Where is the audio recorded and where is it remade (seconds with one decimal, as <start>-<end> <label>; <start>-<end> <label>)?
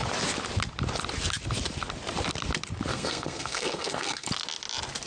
0.0-2.9 recorded; 2.9-4.3 remade; 4.3-5.1 recorded